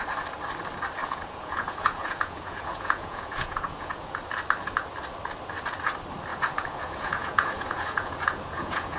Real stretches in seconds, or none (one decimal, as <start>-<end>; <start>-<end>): 0.0-1.0; 4.2-6.3